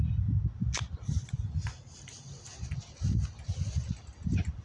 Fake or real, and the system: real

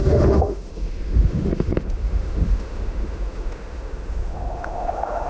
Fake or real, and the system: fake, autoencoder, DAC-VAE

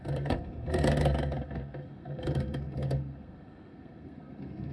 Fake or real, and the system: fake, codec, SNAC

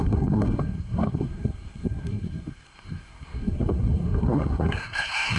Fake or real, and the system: fake, codec, SNAC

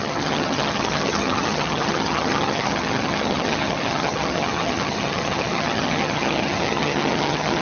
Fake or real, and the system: fake, vocoder, HiFi-GAN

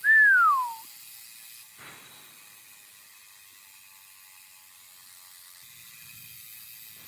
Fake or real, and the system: real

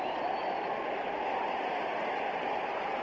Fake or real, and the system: real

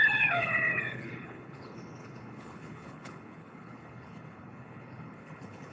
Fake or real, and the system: fake, codec, HILCodec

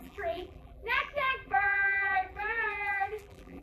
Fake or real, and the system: fake, vocoder, BigVGAN v2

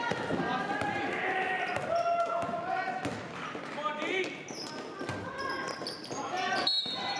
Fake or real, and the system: real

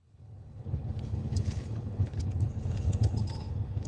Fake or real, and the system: fake, codec, HILCodec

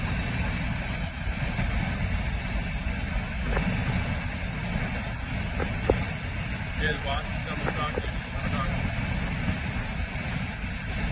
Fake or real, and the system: real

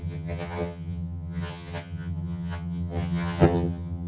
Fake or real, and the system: fake, vocoder, HiFi-GAN